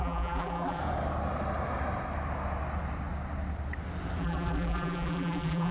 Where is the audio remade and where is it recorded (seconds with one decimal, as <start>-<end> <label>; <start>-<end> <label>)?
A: 0.0-0.8 remade; 0.8-4.2 recorded; 4.2-5.7 remade